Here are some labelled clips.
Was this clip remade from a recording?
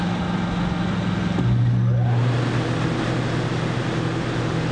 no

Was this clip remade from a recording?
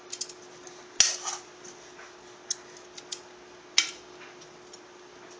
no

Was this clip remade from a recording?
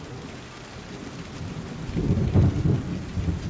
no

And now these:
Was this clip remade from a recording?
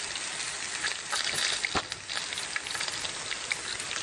no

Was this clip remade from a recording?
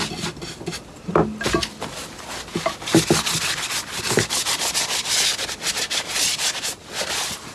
no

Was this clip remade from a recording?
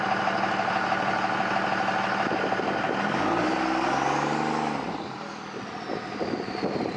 no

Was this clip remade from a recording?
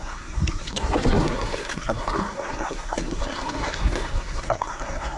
yes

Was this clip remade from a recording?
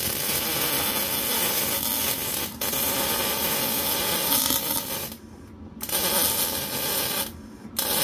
no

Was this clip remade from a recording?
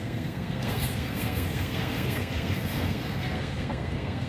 yes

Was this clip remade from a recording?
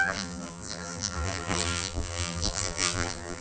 yes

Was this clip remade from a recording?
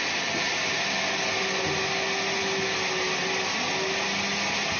no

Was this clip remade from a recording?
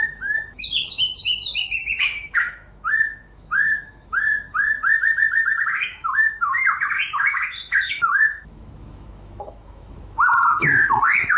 yes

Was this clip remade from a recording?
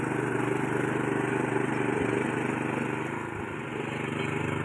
no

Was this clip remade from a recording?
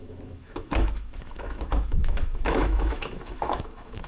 yes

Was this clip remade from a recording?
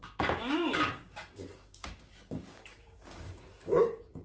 yes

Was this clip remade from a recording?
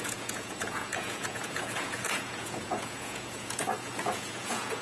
yes